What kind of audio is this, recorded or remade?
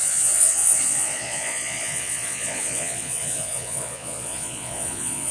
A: remade